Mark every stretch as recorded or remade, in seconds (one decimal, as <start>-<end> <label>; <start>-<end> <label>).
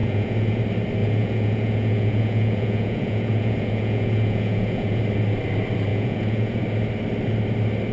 0.0-0.6 remade; 0.6-1.0 recorded; 1.0-5.0 remade; 5.0-5.9 recorded; 5.9-6.6 remade; 6.6-7.9 recorded